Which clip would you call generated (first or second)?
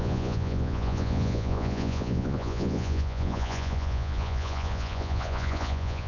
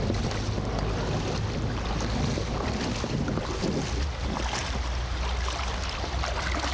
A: first